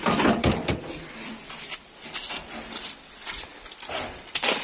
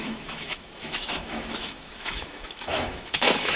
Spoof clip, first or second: second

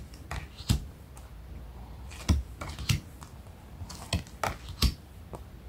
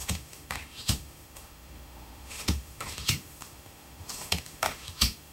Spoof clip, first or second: second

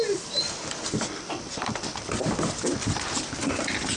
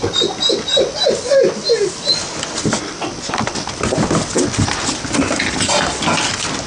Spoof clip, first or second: first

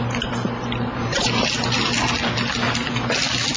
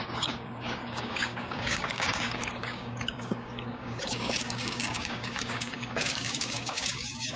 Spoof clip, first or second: second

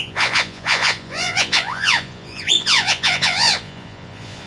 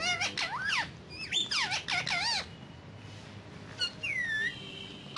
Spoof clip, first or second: first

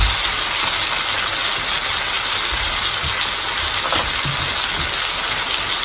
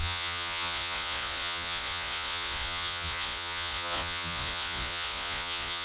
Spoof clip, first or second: second